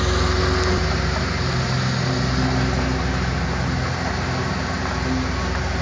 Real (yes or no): yes